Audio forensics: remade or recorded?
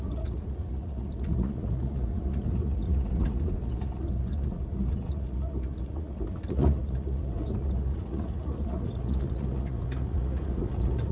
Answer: remade